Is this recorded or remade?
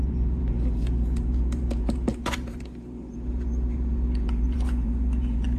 remade